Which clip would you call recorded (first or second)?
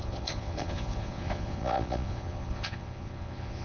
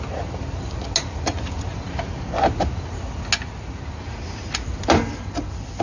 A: second